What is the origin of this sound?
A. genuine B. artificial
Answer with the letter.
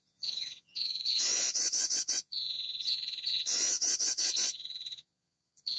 B